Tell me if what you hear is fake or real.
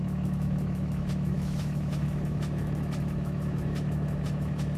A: fake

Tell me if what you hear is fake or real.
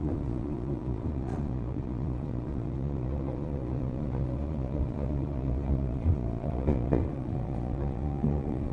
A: fake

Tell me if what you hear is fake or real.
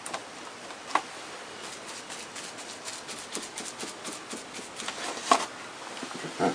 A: real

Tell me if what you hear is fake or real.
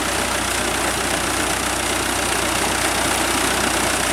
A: real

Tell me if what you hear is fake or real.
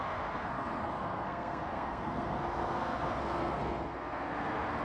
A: fake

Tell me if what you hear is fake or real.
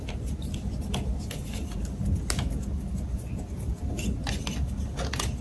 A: real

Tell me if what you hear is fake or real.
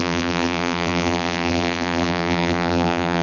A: fake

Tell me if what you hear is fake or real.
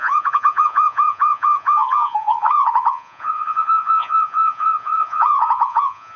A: fake